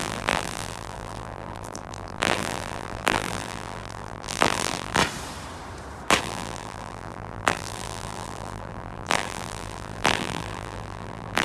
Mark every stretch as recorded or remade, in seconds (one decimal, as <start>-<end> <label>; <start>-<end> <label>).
0.0-5.0 remade; 5.0-6.2 recorded; 6.2-11.4 remade